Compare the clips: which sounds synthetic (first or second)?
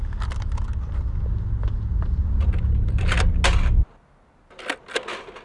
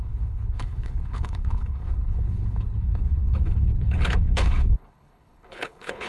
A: second